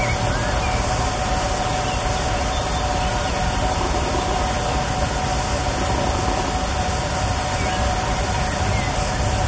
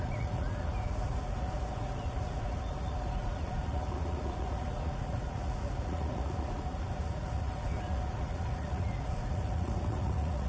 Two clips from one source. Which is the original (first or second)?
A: first